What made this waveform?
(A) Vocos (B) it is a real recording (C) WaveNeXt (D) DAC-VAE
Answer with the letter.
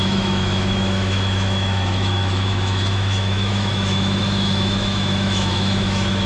D